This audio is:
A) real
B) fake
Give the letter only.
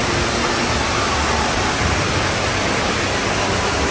A